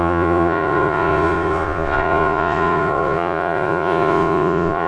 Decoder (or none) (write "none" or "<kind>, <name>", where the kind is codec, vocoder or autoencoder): vocoder, Vocos